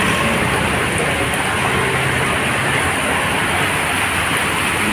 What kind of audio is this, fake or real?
real